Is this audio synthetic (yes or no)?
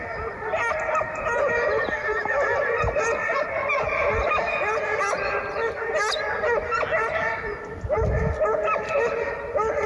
no